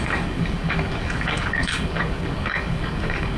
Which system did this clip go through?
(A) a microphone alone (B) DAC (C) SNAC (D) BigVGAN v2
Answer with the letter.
B